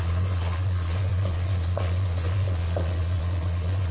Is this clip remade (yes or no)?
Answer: yes